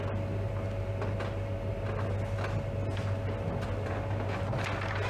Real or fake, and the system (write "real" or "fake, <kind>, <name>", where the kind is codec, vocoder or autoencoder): real